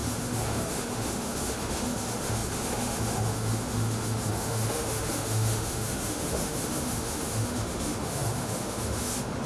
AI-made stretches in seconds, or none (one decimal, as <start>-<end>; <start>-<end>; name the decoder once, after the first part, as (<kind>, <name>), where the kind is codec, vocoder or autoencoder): 0.0-9.5 (autoencoder, DAC-VAE)